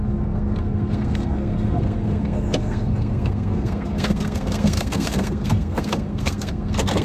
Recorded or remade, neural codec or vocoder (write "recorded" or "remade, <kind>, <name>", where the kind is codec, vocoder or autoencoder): remade, codec, SNAC